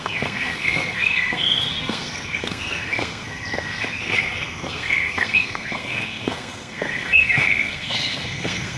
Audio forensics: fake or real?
fake